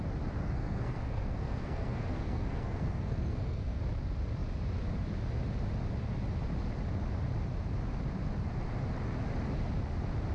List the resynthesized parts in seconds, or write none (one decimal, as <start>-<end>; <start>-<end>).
0.4-3.8